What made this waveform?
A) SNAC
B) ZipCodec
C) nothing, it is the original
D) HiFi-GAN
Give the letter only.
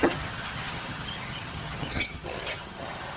D